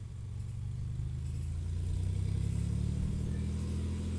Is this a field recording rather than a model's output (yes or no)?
yes